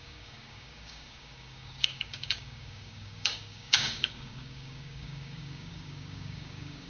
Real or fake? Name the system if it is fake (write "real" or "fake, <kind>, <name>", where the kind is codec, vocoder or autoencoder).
fake, codec, DAC